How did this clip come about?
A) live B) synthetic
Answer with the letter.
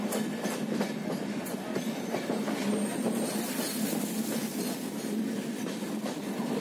A